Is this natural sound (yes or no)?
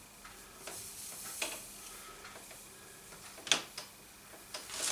yes